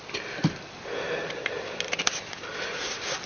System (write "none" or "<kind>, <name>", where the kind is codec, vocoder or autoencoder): none